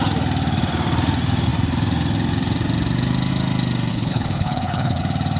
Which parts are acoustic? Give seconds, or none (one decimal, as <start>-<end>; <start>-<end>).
0.0-3.9; 5.0-5.4